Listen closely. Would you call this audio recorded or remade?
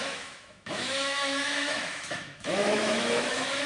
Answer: remade